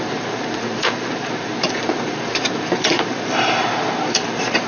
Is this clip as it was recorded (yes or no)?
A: no